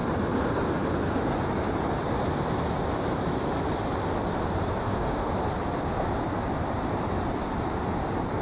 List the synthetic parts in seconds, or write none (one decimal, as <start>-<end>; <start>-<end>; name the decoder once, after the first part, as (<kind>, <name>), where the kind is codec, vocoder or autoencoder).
4.8-5.3 (autoencoder, DAC-VAE)